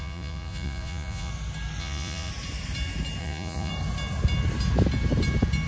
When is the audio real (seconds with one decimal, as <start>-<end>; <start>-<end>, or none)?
1.3-1.8; 2.3-3.2; 3.7-5.7

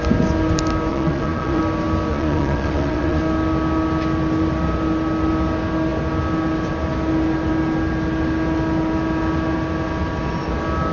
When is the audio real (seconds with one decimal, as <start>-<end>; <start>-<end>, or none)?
0.0-0.9; 1.6-2.1; 3.2-10.9

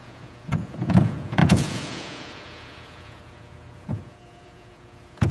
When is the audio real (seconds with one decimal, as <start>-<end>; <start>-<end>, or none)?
none

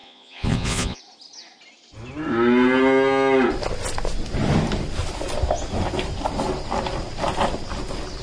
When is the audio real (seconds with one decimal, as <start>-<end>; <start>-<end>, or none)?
1.0-8.2

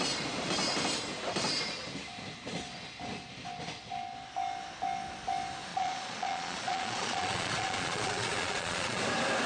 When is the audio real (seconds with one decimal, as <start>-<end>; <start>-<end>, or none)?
0.0-5.7; 9.0-9.5

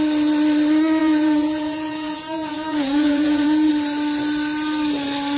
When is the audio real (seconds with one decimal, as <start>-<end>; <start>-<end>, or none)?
0.0-1.0; 3.7-5.4

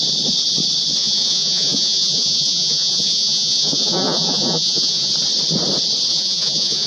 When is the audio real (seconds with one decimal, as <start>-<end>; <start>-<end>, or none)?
0.0-1.0; 5.1-6.1